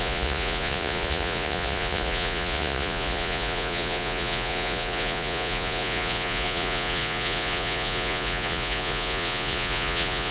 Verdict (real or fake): fake